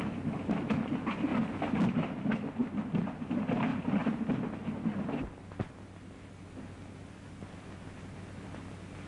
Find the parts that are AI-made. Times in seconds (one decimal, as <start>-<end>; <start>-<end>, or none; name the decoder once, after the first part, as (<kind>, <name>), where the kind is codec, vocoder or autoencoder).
3.7-4.3 (vocoder, BigVGAN v2)